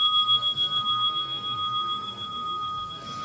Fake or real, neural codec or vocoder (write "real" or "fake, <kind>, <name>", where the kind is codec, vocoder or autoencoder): fake, codec, SNAC